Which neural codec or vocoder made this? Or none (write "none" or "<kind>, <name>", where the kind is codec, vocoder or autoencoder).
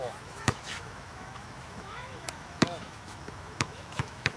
autoencoder, DAC-VAE